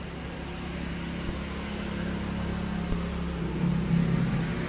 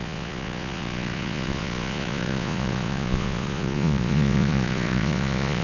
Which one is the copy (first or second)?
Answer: second